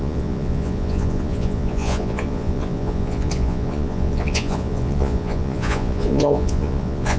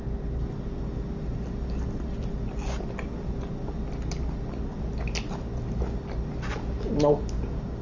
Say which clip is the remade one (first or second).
first